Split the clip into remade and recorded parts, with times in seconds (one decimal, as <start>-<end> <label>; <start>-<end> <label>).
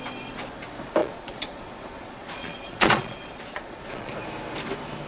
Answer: 0.0-1.0 recorded; 1.0-4.1 remade; 4.1-5.1 recorded